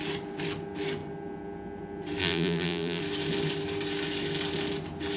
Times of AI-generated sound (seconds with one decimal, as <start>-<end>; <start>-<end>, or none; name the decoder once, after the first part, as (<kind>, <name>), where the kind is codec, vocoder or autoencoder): 2.2-3.0 (vocoder, BigVGAN v2)